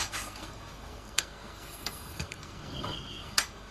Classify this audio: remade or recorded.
remade